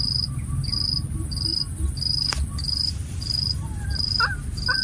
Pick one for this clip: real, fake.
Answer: real